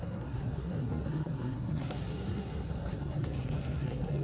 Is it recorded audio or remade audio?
remade